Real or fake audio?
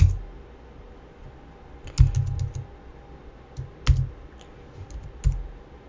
real